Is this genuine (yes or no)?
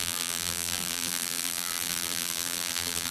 no